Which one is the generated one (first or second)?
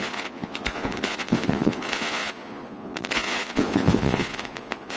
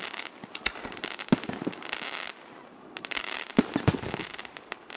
first